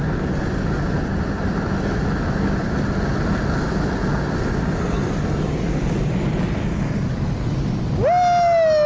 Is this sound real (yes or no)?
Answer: yes